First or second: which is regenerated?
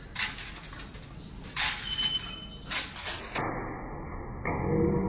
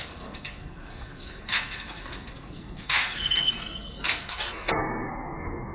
second